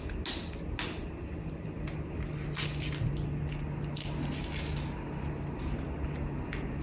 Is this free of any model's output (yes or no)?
yes